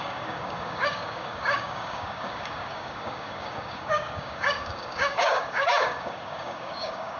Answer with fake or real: fake